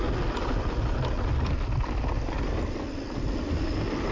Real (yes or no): yes